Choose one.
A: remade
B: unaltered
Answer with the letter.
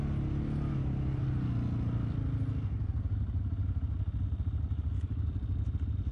B